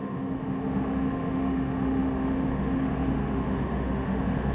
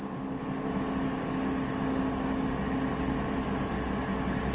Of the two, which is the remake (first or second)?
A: first